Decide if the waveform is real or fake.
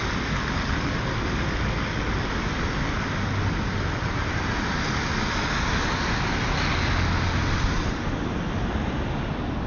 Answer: real